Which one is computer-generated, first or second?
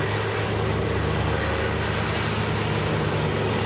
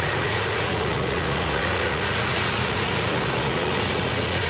second